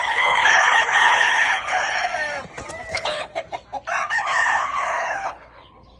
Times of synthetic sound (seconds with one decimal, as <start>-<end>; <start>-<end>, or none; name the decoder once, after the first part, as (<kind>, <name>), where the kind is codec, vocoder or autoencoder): 0.0-2.1 (codec, HILCodec); 2.9-3.3; 4.1-6.0